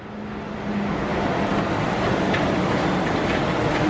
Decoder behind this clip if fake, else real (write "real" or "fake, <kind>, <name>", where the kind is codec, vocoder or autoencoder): real